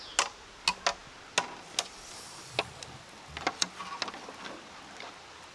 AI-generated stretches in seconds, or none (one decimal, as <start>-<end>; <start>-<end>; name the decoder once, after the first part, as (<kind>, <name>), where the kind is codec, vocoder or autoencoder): none